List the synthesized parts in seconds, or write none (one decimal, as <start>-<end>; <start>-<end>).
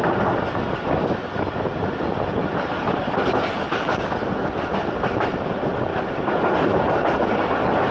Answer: 5.9-6.6